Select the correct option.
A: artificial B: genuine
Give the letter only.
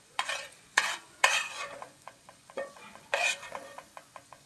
A